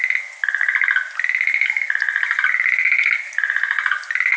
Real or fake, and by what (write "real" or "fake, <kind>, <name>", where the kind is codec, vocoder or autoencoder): real